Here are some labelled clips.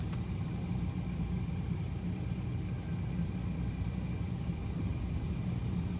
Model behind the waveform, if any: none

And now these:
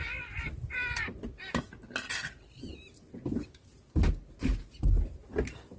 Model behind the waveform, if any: none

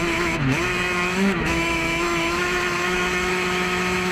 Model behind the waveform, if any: autoencoder, DAC-VAE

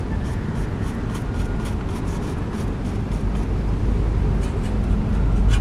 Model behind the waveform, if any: none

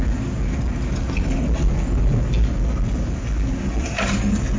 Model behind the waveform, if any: none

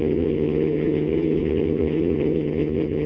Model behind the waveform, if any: vocoder, HiFi-GAN